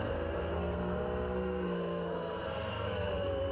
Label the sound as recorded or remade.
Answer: remade